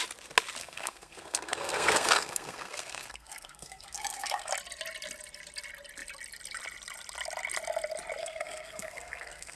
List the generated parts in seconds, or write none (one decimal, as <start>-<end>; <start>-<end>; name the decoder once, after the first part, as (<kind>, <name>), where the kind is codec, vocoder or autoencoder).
0.6-4.5 (codec, SNAC); 8.2-9.6